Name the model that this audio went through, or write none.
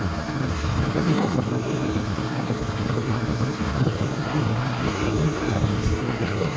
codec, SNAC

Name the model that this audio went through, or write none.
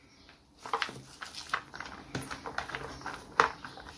none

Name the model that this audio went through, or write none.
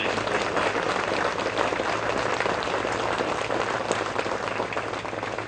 none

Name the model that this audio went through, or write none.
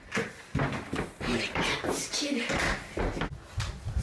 none